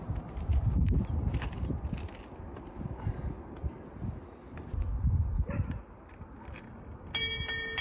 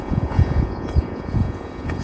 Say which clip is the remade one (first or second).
second